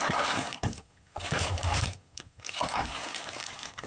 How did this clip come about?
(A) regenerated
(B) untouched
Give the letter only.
A